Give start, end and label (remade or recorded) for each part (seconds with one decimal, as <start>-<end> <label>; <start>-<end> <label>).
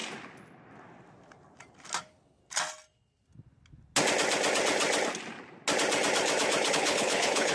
0.0-2.0 recorded; 2.0-2.4 remade; 2.4-6.7 recorded; 6.7-7.5 remade